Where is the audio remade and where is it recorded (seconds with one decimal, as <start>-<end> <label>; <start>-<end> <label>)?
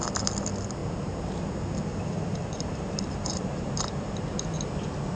0.0-0.8 recorded; 0.8-1.4 remade; 1.4-1.9 recorded; 1.9-4.7 remade; 4.7-5.2 recorded